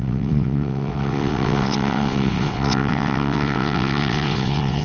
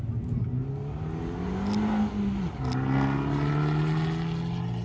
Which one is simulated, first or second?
first